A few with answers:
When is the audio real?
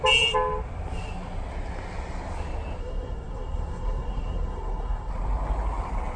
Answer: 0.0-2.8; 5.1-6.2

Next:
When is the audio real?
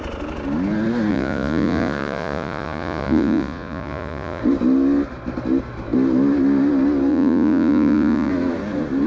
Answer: 0.0-1.1; 4.4-7.1; 8.3-9.1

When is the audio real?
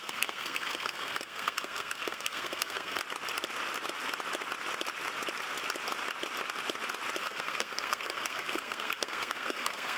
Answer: 3.0-7.2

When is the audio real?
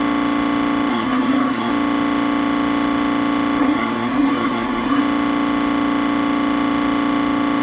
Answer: 0.0-0.9; 1.7-3.6; 5.0-7.6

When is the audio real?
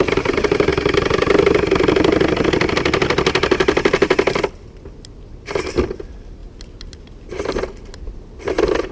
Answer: 0.0-8.9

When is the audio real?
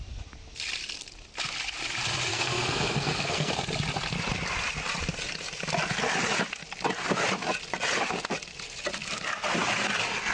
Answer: 0.0-2.3; 3.5-10.3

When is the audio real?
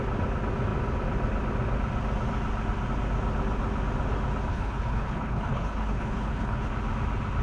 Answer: 0.0-4.5; 6.7-7.4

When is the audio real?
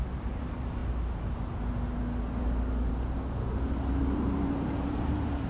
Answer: 0.0-4.0